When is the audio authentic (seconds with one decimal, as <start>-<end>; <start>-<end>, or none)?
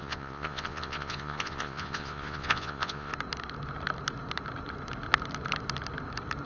3.1-6.5